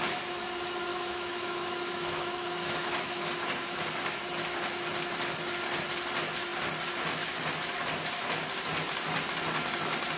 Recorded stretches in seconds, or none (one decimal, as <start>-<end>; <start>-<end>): 0.0-0.9; 3.3-10.2